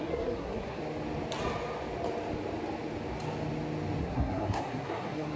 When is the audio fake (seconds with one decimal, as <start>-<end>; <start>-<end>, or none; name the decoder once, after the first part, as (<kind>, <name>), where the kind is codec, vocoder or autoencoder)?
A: 0.0-0.8 (codec, SNAC); 4.0-5.4